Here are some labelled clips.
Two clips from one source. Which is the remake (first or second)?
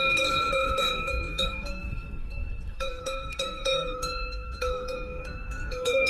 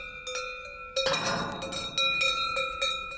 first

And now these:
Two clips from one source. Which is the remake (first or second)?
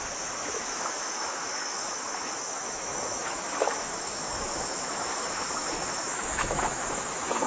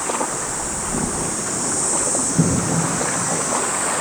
first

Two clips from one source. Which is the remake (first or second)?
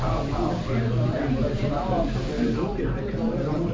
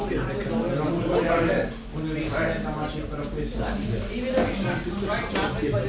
first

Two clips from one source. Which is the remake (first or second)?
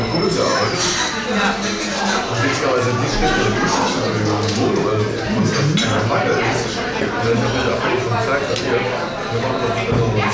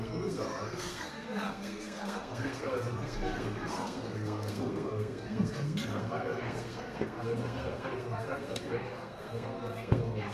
second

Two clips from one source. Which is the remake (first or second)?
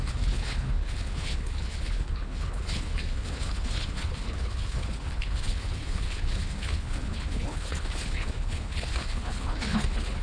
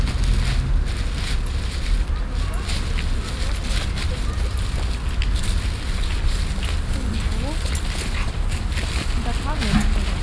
first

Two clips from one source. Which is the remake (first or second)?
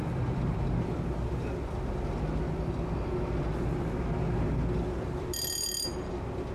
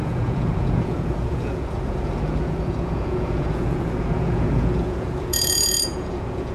second